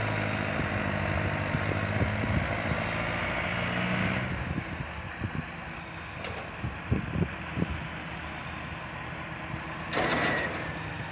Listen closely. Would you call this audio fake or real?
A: real